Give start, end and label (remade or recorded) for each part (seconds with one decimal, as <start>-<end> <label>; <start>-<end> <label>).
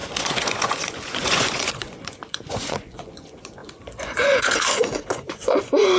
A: 0.0-6.0 remade